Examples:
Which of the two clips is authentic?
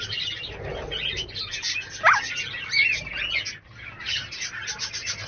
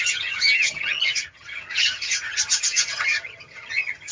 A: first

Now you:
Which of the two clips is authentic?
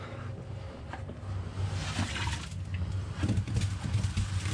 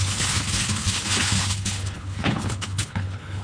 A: first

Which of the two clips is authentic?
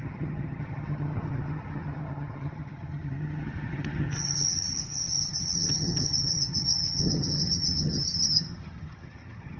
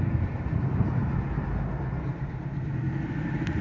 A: second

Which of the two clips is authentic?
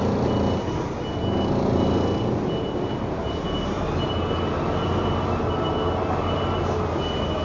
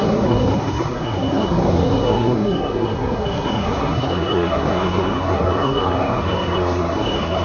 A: first